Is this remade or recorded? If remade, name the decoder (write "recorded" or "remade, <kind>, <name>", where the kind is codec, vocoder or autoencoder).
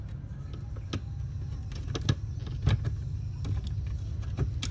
recorded